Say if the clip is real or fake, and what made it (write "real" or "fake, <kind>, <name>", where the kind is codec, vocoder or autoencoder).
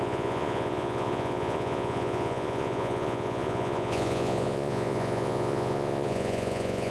fake, vocoder, Vocos